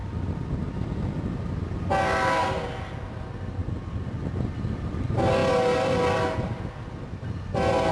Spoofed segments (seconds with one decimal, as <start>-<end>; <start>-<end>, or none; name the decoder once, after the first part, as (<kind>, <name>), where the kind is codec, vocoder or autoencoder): none

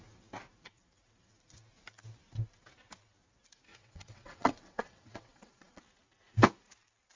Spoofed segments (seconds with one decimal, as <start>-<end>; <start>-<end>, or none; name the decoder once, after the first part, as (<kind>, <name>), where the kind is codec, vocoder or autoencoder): 3.7-5.8 (vocoder, WaveNeXt)

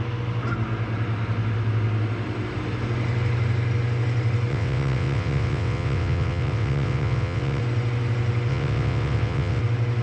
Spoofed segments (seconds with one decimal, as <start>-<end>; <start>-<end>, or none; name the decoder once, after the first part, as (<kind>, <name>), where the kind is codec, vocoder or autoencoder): 4.5-7.6 (vocoder, WaveNeXt); 8.5-9.6